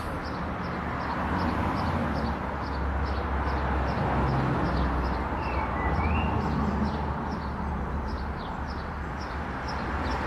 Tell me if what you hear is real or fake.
real